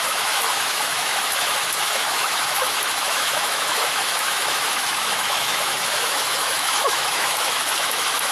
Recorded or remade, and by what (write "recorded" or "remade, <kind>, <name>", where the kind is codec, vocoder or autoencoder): remade, autoencoder, DAC-VAE